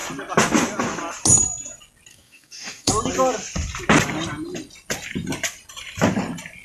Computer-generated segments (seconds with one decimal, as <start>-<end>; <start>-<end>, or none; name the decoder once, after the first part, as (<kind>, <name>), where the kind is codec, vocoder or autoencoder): 2.1-2.9 (codec, DAC)